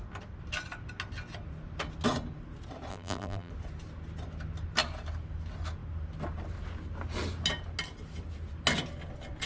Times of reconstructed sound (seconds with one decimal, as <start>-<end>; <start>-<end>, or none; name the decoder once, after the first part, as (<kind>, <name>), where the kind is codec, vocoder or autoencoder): 2.9-3.5 (vocoder, BigVGAN v2)